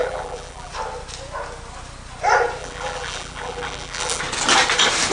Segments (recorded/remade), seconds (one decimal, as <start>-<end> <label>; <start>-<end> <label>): 0.0-0.7 remade; 0.7-2.6 recorded; 2.6-4.2 remade; 4.2-5.1 recorded